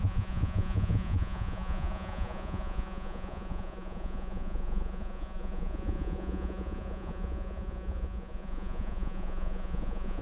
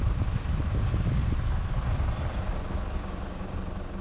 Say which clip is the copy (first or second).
first